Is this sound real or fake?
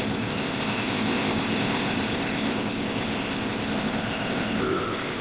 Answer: fake